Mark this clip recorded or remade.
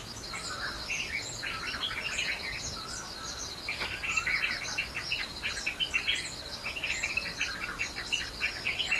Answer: recorded